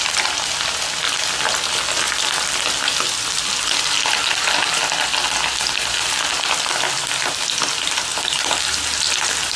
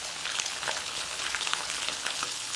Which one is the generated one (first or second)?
second